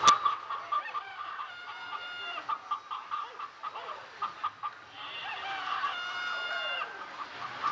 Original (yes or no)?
yes